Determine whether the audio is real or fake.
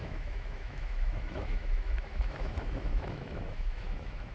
fake